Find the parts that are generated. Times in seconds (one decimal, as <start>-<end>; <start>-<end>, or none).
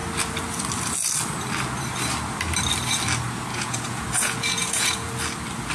3.5-5.1